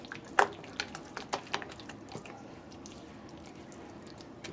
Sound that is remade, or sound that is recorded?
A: recorded